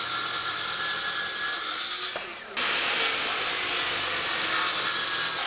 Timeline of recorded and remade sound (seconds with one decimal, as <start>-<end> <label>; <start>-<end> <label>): 0.0-5.5 recorded